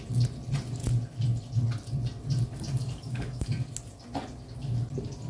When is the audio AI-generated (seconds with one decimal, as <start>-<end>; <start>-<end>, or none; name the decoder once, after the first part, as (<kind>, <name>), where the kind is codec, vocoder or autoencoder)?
2.8-3.7 (codec, DAC)